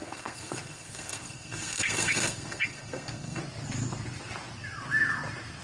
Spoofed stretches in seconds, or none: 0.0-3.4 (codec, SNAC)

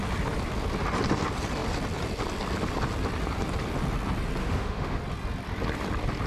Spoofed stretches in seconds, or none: 4.4-5.0 (autoencoder, DAC-VAE)

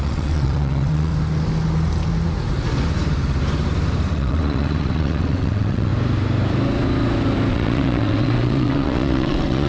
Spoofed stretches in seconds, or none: 0.0-1.1 (vocoder, WaveNeXt); 4.1-5.9; 7.5-9.7

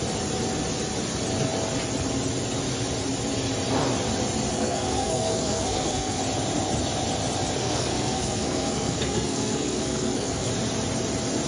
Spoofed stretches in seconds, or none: 4.5-6.2 (codec, SNAC); 7.6-10.5

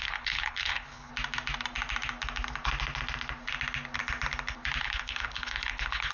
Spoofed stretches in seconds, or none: 0.0-1.1 (codec, HILCodec); 4.8-6.1

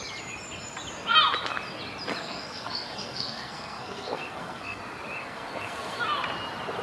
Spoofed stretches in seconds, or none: 2.2-4.8 (codec, SNAC); 5.2-6.0

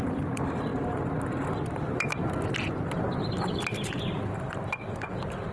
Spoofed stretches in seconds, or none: none